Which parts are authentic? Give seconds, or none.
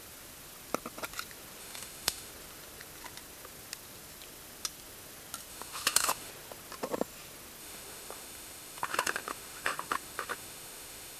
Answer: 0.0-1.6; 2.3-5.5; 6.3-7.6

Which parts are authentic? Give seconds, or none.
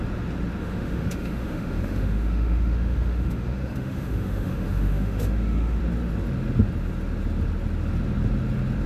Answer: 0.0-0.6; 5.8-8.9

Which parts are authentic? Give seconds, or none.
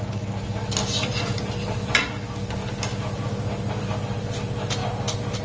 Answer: 0.0-5.4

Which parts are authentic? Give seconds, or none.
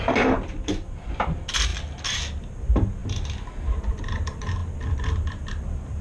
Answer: 0.0-6.0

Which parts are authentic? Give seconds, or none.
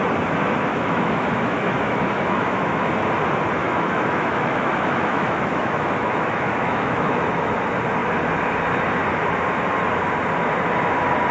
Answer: 0.0-0.7; 2.9-3.6; 7.5-11.3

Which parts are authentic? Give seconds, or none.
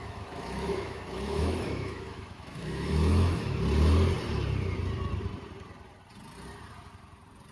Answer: 3.5-7.5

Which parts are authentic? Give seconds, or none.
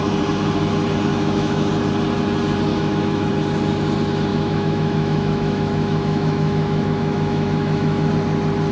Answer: 0.0-1.1; 1.7-2.7; 3.3-4.3; 8.1-8.7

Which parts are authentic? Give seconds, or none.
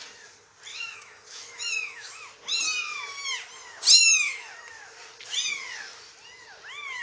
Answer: 0.0-0.7; 2.2-4.0; 4.5-7.0